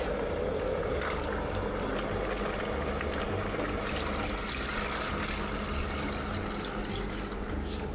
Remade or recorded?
recorded